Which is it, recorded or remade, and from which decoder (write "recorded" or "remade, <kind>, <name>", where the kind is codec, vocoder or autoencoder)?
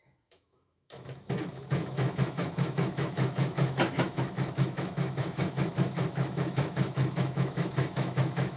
remade, autoencoder, DAC-VAE